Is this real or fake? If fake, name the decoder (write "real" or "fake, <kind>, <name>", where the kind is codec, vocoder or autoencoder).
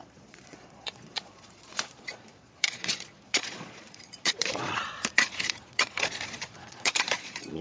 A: fake, vocoder, Vocos